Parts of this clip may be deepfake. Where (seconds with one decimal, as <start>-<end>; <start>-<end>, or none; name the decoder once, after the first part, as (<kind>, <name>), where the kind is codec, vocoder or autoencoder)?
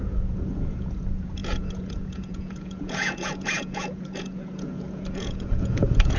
0.0-6.2 (vocoder, Vocos)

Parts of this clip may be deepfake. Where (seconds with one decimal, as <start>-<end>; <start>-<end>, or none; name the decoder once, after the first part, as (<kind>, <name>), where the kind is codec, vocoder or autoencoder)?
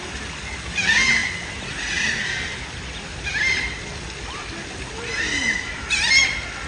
none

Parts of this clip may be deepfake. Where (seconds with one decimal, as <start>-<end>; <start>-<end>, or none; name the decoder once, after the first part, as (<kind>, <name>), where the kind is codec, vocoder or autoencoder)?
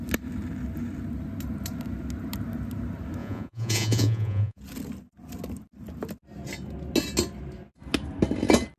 3.2-4.6 (vocoder, Vocos)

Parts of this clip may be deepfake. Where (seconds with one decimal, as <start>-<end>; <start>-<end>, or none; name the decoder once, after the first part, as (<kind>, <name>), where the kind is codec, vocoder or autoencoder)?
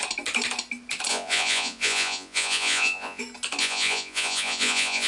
1.1-3.2 (vocoder, Vocos); 3.6-5.1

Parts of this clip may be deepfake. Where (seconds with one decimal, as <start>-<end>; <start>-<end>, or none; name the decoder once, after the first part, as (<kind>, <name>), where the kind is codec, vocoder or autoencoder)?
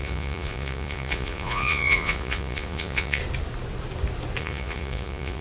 0.0-3.2 (vocoder, Vocos); 4.4-5.4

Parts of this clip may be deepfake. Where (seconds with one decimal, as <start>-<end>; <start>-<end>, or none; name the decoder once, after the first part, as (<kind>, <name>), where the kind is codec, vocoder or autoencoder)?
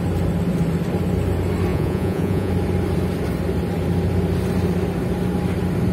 1.7-2.5 (vocoder, Vocos)